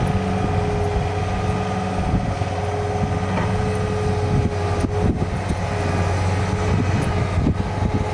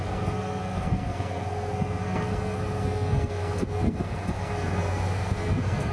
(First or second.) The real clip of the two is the first